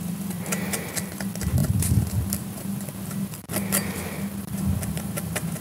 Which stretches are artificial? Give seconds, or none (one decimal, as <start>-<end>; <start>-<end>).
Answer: 1.6-5.0

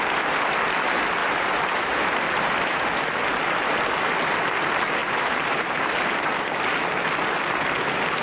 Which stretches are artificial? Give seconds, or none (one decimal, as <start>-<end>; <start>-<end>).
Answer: 1.2-2.0; 5.0-6.4